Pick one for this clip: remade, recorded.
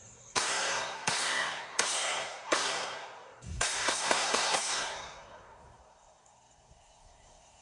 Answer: remade